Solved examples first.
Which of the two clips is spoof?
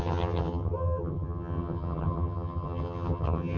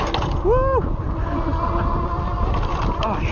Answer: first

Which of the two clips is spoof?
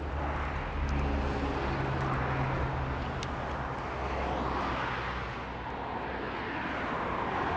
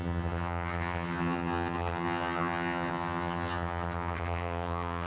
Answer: second